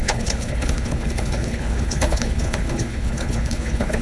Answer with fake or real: fake